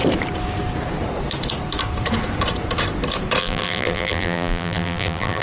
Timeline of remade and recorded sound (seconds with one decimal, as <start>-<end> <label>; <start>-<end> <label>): 0.0-3.4 recorded; 3.4-5.4 remade